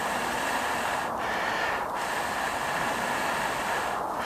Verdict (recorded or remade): recorded